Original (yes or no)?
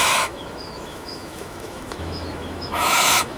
no